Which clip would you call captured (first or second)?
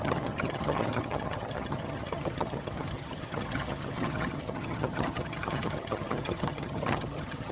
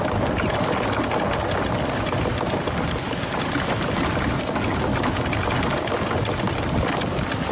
second